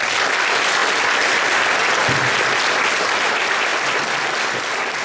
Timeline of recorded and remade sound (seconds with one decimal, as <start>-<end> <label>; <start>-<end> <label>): 0.0-5.0 recorded